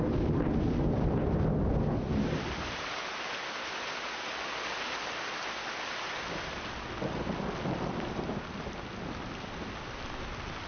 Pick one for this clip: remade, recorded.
recorded